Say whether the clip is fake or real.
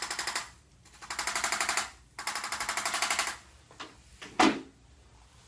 real